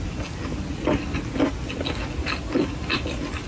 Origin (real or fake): real